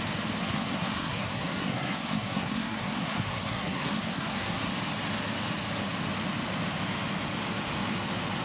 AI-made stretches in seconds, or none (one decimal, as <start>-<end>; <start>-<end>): 0.4-4.7